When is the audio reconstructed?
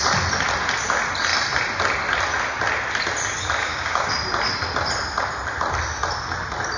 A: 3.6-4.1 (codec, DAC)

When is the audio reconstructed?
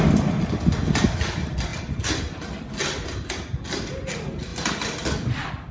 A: none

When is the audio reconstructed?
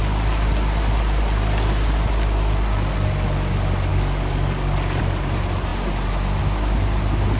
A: 3.9-5.0 (codec, DAC)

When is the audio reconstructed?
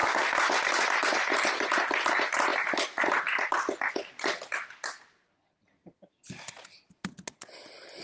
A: none